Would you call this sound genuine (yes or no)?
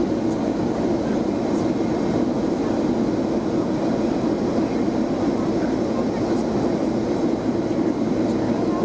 yes